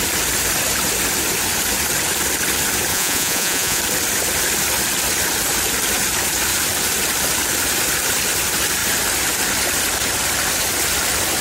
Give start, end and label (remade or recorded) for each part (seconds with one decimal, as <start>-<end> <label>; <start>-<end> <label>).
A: 0.0-2.9 recorded; 2.9-3.8 remade; 3.8-11.4 recorded